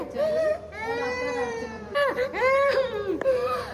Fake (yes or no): yes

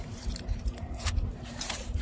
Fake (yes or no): yes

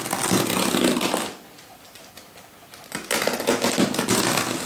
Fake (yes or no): no